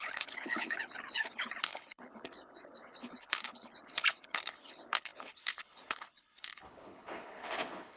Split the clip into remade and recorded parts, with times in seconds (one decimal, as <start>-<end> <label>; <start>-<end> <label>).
0.0-8.0 remade